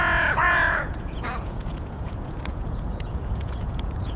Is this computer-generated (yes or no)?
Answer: yes